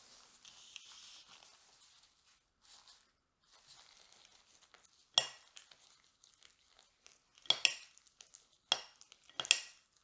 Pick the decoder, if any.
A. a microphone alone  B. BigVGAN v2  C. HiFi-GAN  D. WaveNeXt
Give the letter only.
A